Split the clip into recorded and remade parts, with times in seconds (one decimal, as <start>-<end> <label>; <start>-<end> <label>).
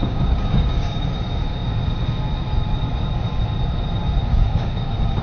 0.0-1.1 remade; 1.1-4.3 recorded; 4.3-5.2 remade